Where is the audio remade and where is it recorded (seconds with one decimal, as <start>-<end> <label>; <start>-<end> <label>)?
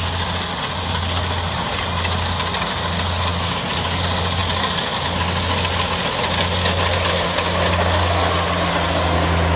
0.0-9.6 recorded